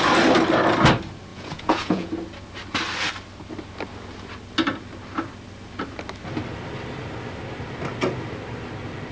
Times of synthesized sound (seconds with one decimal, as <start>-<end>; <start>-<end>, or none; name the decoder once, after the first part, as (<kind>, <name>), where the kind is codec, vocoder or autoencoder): 1.3-2.1 (vocoder, Vocos)